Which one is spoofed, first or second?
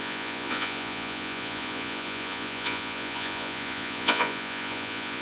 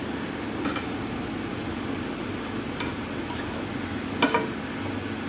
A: first